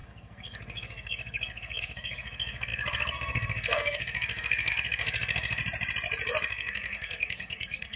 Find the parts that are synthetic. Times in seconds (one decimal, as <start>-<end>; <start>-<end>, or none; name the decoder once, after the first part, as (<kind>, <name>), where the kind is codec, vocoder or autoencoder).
0.0-5.6 (codec, SNAC); 6.4-8.0